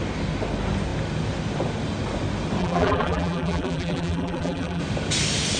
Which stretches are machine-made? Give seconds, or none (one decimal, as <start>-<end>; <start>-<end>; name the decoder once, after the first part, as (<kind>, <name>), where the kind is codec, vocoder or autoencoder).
2.6-4.8 (vocoder, BigVGAN v2)